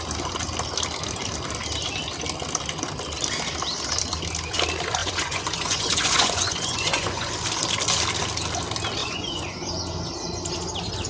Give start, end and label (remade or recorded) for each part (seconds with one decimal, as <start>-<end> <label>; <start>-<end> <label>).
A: 0.0-5.0 recorded; 5.0-7.3 remade; 7.3-9.0 recorded; 9.0-9.7 remade; 9.7-11.1 recorded